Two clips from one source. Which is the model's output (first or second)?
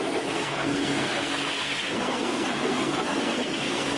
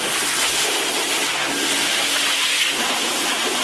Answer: first